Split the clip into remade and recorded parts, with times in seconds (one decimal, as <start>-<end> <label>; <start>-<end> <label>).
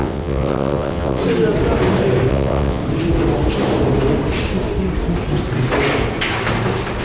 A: 0.0-1.2 remade; 1.2-2.3 recorded; 2.3-2.8 remade; 2.8-7.0 recorded